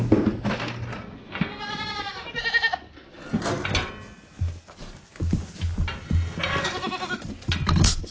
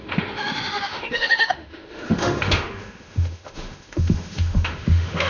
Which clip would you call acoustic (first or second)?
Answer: first